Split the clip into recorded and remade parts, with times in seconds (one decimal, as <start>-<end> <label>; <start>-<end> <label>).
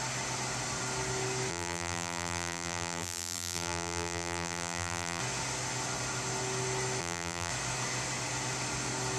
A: 0.0-1.5 recorded; 1.5-5.2 remade; 5.2-7.0 recorded; 7.0-7.5 remade; 7.5-9.2 recorded